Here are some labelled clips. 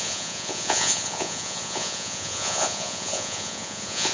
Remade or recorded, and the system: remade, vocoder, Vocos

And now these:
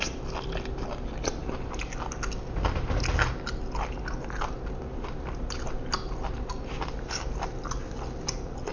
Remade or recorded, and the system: recorded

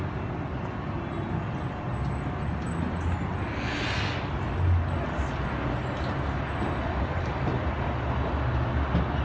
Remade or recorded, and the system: recorded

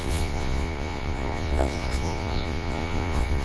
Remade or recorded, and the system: remade, vocoder, Vocos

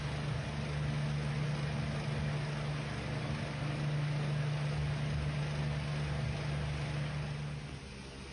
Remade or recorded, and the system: recorded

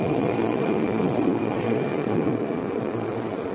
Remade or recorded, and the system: remade, vocoder, Vocos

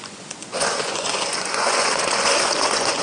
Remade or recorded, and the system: remade, vocoder, Vocos